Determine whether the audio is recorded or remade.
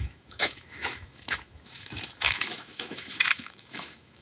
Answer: remade